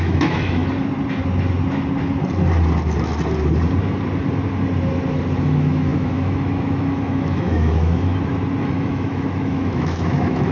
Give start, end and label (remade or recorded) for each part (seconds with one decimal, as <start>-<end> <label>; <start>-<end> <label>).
0.0-0.6 remade; 0.6-5.4 recorded; 5.4-8.1 remade; 8.1-8.6 recorded; 8.6-10.5 remade